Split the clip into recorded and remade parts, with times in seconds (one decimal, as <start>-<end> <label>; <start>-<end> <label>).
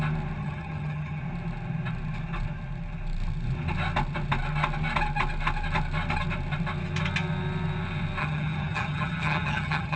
0.0-0.4 recorded; 0.4-1.2 remade; 1.2-8.2 recorded; 8.2-10.0 remade